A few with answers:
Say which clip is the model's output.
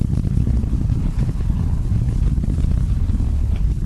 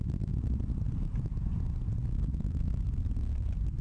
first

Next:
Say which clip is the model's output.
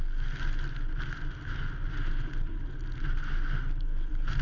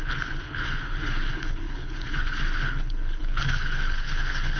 second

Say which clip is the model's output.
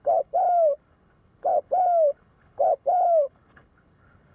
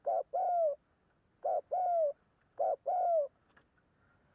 first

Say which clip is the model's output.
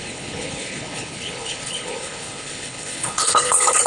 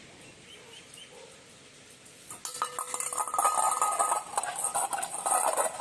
first